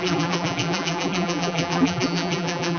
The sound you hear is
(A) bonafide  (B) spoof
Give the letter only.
B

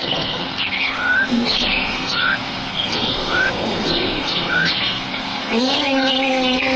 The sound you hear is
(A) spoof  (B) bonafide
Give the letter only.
A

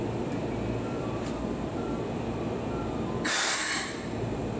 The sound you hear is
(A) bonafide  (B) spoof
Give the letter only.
B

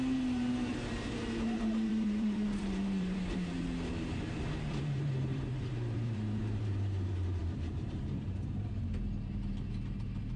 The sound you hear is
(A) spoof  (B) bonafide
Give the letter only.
A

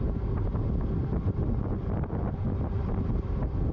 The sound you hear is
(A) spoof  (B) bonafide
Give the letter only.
B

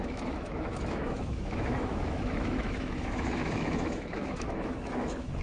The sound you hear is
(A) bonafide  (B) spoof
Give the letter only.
B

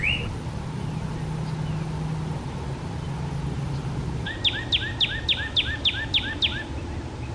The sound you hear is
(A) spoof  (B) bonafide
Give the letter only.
B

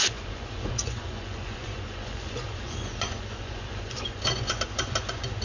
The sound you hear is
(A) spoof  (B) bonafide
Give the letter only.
A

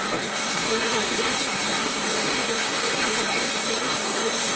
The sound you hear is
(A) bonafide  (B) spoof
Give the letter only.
B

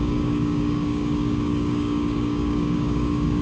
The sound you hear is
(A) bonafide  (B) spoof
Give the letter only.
B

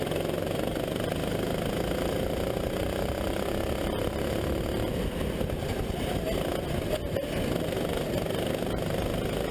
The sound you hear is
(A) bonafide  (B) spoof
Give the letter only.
A